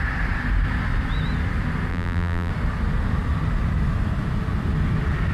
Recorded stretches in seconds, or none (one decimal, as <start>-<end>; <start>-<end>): 0.0-1.9; 2.5-5.3